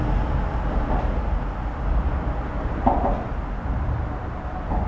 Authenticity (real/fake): real